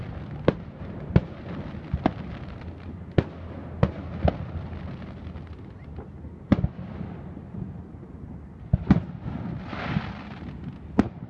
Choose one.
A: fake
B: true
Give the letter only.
B